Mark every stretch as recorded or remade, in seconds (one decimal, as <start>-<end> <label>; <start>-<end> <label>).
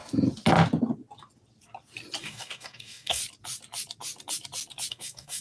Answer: 0.0-2.2 recorded; 2.2-3.2 remade; 3.2-4.9 recorded; 4.9-5.4 remade